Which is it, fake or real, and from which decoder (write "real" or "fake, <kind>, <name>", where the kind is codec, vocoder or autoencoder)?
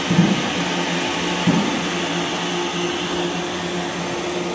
real